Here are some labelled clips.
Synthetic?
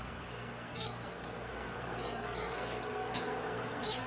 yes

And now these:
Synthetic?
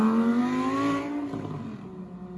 no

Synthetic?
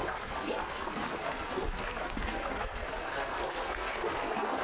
yes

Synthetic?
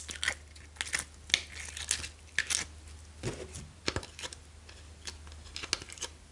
no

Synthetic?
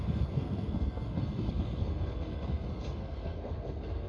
yes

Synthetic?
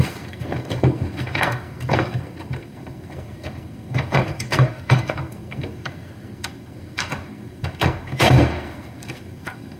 yes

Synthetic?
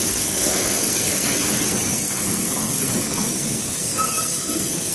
yes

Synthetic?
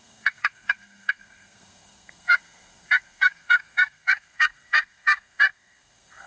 yes